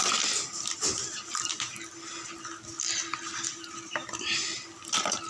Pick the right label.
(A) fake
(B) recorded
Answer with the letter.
B